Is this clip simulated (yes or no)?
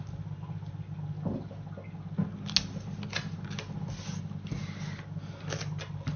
no